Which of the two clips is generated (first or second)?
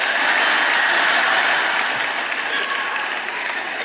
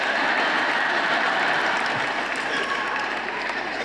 second